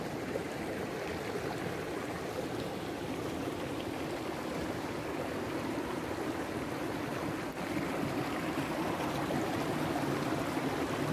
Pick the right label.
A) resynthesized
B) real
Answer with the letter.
B